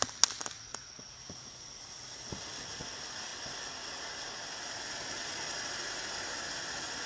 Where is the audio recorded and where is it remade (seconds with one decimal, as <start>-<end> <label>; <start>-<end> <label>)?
0.0-0.7 recorded; 0.7-2.2 remade; 2.2-7.1 recorded